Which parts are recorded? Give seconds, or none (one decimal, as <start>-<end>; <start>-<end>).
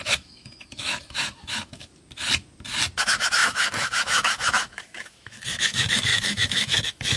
1.9-3.0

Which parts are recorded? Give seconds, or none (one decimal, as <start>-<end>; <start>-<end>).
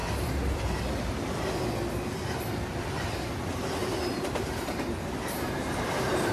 0.0-3.8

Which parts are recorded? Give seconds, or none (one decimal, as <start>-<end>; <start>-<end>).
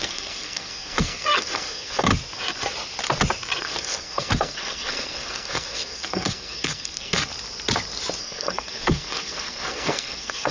2.1-3.6; 7.3-8.2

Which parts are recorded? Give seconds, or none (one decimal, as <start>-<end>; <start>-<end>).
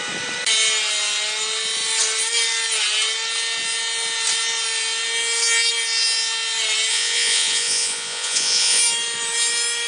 0.0-6.9; 8.8-9.9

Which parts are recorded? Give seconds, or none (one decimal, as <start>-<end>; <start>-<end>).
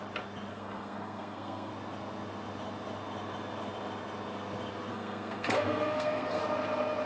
0.0-0.5; 1.7-4.9; 6.4-7.1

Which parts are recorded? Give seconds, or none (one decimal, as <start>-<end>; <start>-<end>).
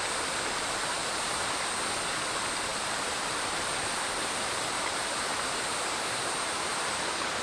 0.0-1.0; 1.5-2.7; 6.8-7.4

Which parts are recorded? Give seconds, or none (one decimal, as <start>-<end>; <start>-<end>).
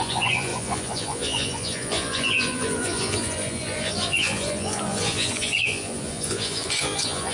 none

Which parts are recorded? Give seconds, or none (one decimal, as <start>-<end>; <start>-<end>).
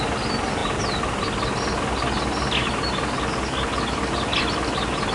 0.0-5.1